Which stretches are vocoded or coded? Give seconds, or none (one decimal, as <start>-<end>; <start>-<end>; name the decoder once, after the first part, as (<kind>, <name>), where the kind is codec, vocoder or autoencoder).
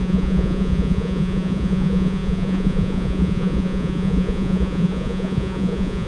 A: 0.0-6.1 (vocoder, Vocos)